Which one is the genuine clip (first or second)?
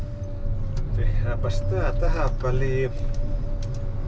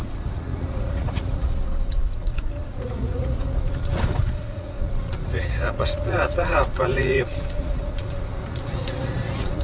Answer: first